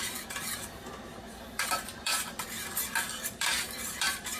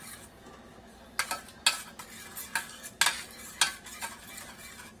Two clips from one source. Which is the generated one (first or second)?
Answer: first